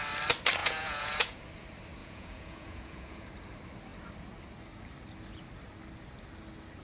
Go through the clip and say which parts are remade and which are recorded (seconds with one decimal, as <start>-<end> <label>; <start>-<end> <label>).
0.0-0.6 recorded; 0.6-1.4 remade; 1.4-2.0 recorded; 2.0-3.3 remade; 3.3-6.8 recorded